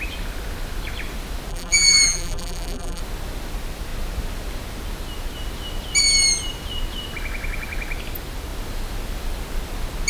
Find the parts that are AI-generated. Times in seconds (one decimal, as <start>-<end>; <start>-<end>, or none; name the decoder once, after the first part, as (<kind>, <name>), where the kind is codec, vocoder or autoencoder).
1.5-3.0 (vocoder, BigVGAN v2)